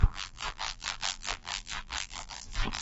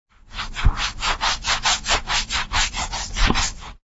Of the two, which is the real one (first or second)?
second